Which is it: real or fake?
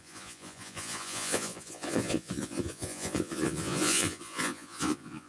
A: fake